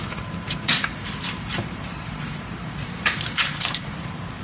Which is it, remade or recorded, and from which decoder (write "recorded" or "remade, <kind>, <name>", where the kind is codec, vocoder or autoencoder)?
remade, vocoder, BigVGAN v2